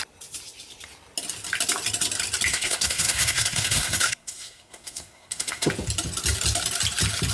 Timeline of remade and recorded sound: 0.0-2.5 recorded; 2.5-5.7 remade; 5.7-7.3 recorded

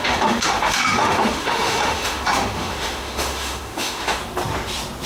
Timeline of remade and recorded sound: 0.0-4.2 remade; 4.2-5.1 recorded

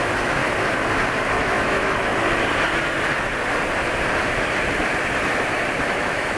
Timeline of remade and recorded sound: 0.0-0.4 remade; 0.4-1.4 recorded; 1.4-2.1 remade; 2.1-5.9 recorded; 5.9-6.4 remade

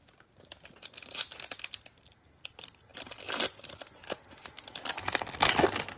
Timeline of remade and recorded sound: 0.0-6.0 recorded

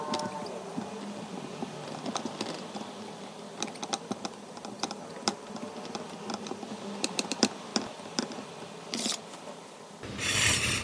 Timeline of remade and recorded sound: 0.0-10.8 recorded